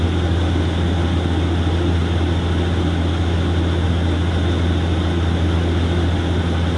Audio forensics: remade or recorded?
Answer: recorded